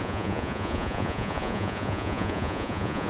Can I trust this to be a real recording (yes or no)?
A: no